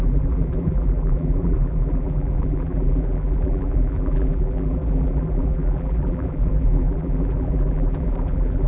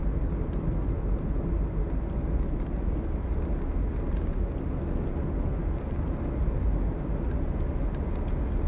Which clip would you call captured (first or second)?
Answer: second